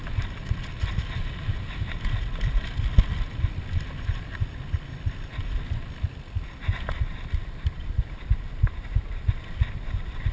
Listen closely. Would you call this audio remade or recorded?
recorded